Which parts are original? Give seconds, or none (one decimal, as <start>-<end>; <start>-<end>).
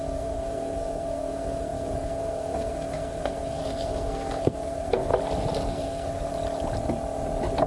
5.1-5.7; 6.3-7.7